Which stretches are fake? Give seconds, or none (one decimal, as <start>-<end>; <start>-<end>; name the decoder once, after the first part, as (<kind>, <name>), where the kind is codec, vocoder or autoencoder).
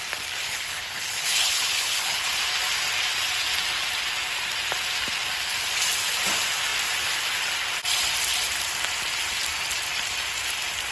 0.4-2.3 (codec, HILCodec)